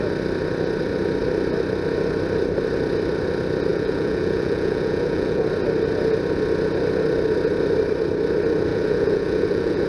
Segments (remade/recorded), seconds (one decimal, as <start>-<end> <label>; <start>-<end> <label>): 0.0-3.7 recorded; 3.7-5.4 remade; 5.4-8.7 recorded; 8.7-9.9 remade